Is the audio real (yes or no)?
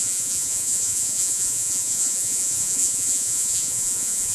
no